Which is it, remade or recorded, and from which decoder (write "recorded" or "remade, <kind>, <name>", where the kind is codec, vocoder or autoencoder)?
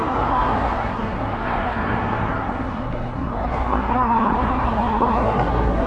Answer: remade, codec, SNAC